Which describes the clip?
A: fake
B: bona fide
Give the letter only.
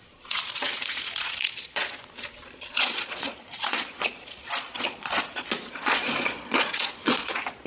A